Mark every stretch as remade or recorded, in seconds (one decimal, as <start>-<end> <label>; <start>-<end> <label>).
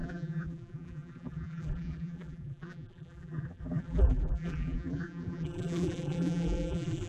0.0-7.1 remade